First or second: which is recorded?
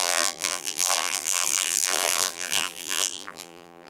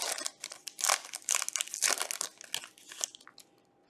second